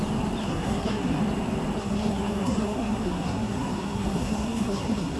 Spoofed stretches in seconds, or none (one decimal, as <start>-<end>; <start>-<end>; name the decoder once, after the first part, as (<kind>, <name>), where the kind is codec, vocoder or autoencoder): 0.4-1.2 (codec, SNAC); 1.8-5.2